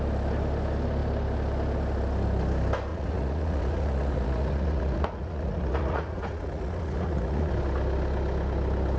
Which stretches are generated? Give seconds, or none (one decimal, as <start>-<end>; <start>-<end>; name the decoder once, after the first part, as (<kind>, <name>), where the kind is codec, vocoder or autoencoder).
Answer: 2.9-7.5 (vocoder, Vocos)